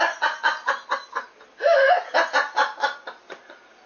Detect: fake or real real